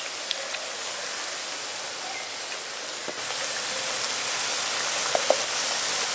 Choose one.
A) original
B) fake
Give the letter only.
A